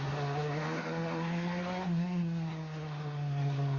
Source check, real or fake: fake